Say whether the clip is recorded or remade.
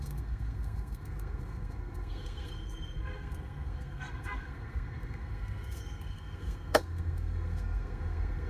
remade